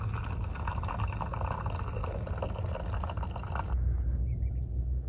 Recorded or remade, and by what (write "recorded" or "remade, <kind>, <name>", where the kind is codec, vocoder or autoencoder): recorded